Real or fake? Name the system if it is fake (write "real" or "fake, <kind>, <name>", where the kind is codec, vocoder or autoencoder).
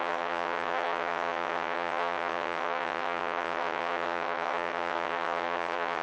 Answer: fake, vocoder, HiFi-GAN